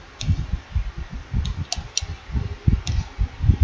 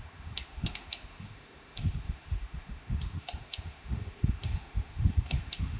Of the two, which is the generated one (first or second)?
second